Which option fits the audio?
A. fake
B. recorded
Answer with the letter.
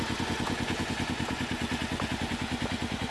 A